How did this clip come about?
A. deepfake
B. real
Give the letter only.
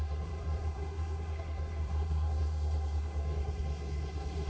A